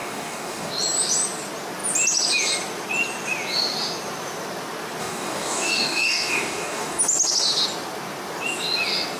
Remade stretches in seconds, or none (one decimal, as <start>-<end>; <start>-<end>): 0.0-0.7; 5.0-7.0